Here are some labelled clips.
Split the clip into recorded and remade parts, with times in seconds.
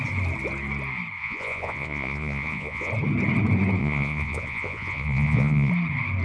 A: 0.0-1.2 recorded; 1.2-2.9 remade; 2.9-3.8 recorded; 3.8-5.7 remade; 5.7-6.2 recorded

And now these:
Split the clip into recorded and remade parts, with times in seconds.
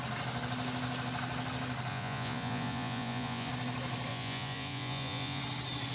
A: 0.0-1.9 recorded; 1.9-3.5 remade; 3.5-4.1 recorded; 4.1-5.4 remade; 5.4-5.9 recorded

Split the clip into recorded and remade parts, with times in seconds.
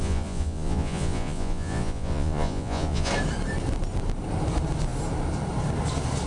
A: 0.0-3.1 remade; 3.1-6.3 recorded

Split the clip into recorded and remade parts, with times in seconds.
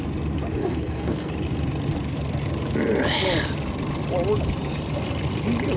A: 0.0-0.6 recorded; 0.6-1.3 remade; 1.3-5.8 recorded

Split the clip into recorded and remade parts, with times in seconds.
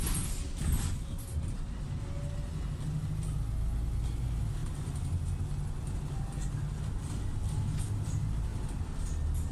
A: 0.0-9.5 recorded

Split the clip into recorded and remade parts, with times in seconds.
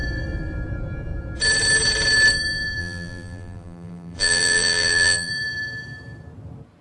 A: 0.0-2.8 recorded; 2.8-5.3 remade; 5.3-6.8 recorded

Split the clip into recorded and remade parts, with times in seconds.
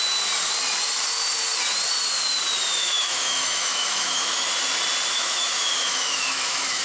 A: 0.0-2.8 recorded; 2.8-4.5 remade; 4.5-5.1 recorded; 5.1-6.8 remade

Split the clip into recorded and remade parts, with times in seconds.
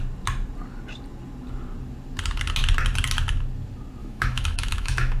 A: 0.0-4.0 recorded; 4.0-5.2 remade